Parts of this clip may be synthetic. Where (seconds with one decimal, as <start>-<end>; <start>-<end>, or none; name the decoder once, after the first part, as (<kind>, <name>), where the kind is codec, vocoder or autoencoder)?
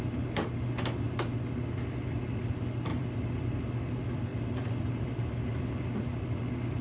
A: 2.9-3.7 (vocoder, BigVGAN v2); 4.3-6.0